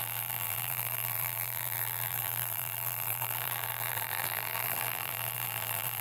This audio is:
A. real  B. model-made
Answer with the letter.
B